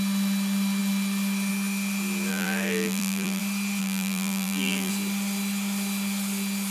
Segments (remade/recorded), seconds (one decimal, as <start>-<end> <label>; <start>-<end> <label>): 0.0-2.3 recorded; 2.3-3.4 remade; 3.4-3.8 recorded; 3.8-4.9 remade; 4.9-6.7 recorded